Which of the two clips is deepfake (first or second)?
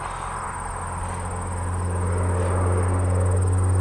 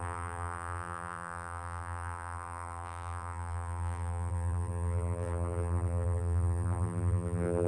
second